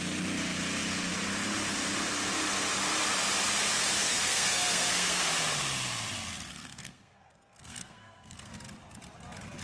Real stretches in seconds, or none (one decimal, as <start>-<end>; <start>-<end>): 0.0-4.0; 5.3-6.5; 8.5-9.6